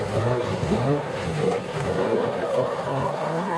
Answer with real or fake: fake